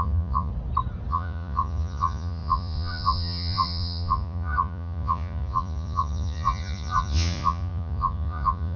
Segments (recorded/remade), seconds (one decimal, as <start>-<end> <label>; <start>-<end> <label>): 0.0-0.5 remade; 0.5-1.1 recorded; 1.1-8.8 remade